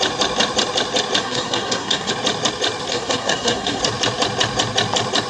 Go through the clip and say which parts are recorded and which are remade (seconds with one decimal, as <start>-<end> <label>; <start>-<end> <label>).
0.0-1.2 recorded; 1.2-2.1 remade; 2.1-2.9 recorded; 2.9-3.8 remade; 3.8-5.3 recorded